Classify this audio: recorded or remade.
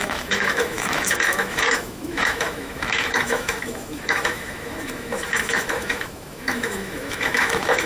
remade